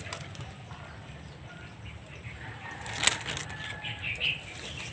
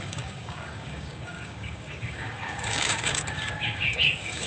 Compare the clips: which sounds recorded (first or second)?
first